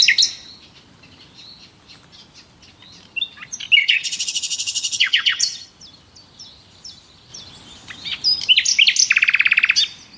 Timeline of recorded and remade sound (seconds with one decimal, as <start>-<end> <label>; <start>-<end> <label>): 0.0-3.8 recorded; 3.8-5.7 remade; 5.7-10.2 recorded

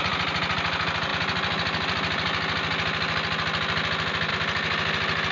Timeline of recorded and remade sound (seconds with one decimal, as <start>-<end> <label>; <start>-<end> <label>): 0.0-5.3 recorded

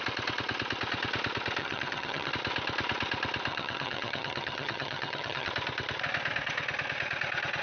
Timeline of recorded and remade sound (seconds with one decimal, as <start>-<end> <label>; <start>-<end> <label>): 0.0-1.6 recorded; 1.6-2.3 remade; 2.3-3.5 recorded; 3.5-5.5 remade; 5.5-7.6 recorded

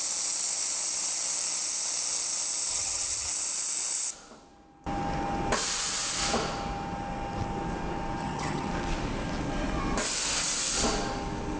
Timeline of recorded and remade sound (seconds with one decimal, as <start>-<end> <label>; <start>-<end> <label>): 0.0-2.7 recorded; 2.7-3.3 remade; 3.3-8.2 recorded; 8.2-8.7 remade; 8.7-11.6 recorded

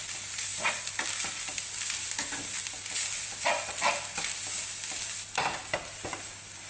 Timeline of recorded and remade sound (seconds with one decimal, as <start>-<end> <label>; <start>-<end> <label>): 0.0-6.7 recorded

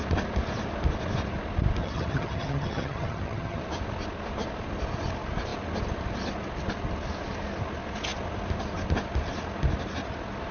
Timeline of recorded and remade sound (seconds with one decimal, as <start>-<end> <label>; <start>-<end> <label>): 0.0-1.8 recorded; 1.8-3.6 remade; 3.6-10.5 recorded

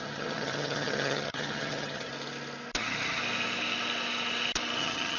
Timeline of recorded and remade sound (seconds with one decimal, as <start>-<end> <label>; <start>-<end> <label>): 0.0-2.1 remade; 2.1-2.8 recorded; 2.8-3.2 remade; 3.2-4.8 recorded; 4.8-5.2 remade